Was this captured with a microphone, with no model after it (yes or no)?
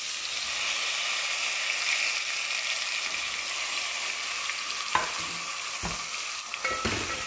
yes